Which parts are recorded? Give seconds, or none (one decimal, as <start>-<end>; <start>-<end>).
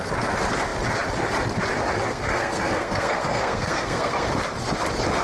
0.0-2.1; 4.3-5.2